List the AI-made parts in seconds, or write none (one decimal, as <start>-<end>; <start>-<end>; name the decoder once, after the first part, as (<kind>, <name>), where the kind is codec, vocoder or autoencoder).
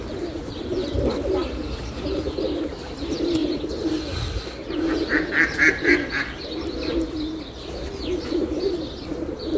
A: 7.8-8.4 (vocoder, BigVGAN v2)